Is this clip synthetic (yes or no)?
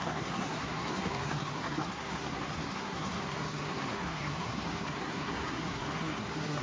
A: yes